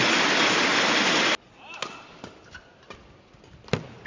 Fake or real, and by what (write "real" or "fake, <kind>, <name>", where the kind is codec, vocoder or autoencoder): real